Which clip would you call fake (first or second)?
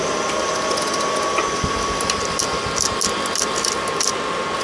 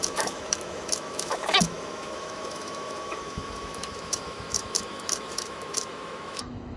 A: second